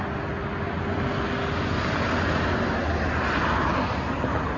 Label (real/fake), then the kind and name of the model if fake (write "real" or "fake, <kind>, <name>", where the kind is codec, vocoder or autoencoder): real